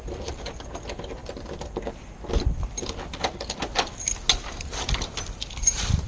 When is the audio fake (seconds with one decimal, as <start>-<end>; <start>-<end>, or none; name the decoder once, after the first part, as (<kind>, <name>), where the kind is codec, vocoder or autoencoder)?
none

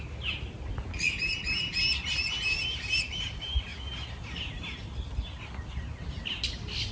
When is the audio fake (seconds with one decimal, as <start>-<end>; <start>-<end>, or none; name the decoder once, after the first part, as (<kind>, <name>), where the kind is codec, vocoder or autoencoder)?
none

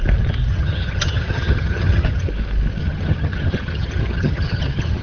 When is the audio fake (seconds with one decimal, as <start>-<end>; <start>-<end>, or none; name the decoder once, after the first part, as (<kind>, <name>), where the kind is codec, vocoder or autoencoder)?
0.5-2.3 (vocoder, HiFi-GAN); 2.8-5.0

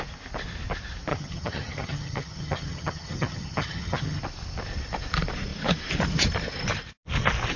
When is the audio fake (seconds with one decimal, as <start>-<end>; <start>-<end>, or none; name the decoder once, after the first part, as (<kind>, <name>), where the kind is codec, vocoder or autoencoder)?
1.1-4.2 (vocoder, HiFi-GAN)